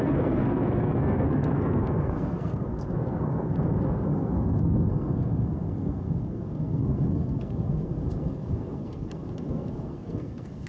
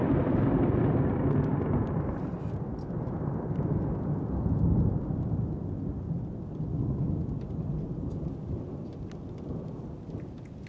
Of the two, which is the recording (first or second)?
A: second